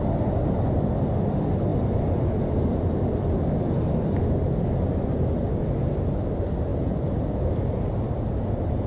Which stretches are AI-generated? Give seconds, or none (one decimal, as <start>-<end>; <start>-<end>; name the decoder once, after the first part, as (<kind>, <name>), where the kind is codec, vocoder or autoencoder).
none